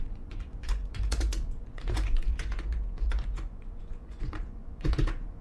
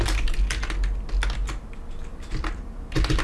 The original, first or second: second